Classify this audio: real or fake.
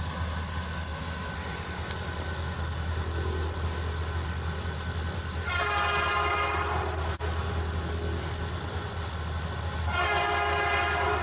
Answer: real